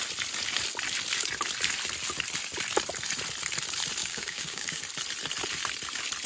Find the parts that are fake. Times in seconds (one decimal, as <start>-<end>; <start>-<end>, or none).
4.0-4.8